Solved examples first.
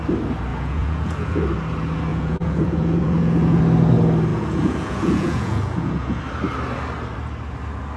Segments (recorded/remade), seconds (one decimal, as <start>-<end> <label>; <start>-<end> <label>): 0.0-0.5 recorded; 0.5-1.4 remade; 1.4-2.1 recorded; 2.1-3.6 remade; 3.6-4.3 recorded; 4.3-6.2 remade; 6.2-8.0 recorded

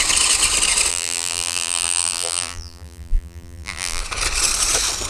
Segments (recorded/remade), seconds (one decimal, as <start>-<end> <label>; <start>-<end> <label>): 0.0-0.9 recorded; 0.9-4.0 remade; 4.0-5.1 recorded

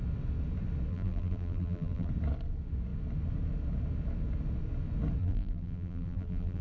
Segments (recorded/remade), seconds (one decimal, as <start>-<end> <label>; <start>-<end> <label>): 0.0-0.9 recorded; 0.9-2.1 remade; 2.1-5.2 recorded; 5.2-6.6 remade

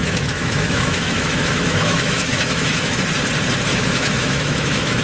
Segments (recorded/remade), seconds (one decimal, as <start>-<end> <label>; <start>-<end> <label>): 0.0-3.0 remade; 3.0-3.7 recorded; 3.7-5.0 remade